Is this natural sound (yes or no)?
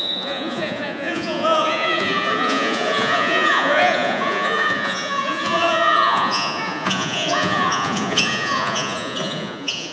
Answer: no